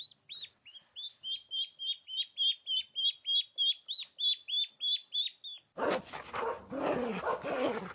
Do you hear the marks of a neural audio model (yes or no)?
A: no